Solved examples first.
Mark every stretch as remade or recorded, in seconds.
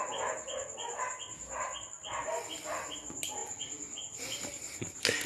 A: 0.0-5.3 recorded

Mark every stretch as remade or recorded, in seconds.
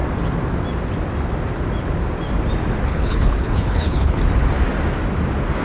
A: 0.0-2.9 recorded; 2.9-4.2 remade; 4.2-5.6 recorded